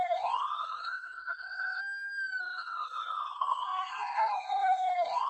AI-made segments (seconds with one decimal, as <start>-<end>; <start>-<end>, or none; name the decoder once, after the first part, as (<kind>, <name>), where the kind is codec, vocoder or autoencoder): 0.0-1.8 (codec, SNAC); 2.4-5.3